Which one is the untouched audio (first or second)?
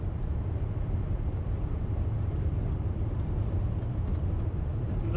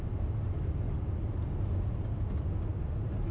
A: second